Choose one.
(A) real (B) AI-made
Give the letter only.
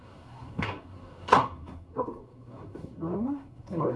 B